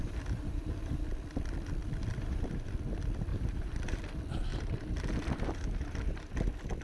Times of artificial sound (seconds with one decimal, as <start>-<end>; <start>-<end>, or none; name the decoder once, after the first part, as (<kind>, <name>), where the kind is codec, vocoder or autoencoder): 0.0-1.0 (vocoder, BigVGAN v2); 2.1-2.7; 3.3-4.0; 4.5-6.3